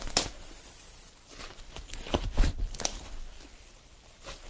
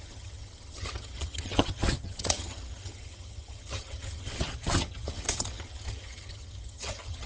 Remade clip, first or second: second